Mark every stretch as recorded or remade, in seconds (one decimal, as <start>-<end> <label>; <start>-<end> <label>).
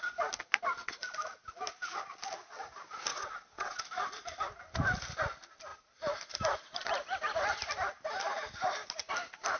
0.0-3.1 recorded; 3.1-3.8 remade; 3.8-9.6 recorded